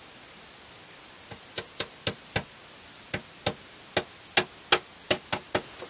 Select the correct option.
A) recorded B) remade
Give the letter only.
A